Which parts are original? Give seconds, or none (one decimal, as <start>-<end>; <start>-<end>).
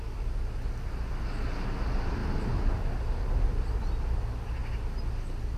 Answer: 0.0-5.6